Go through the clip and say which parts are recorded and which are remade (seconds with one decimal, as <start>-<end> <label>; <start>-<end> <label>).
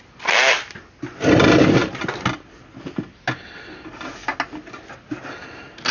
0.0-5.9 recorded